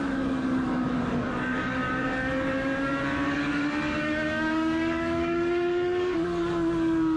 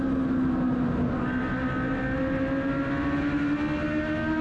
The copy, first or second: first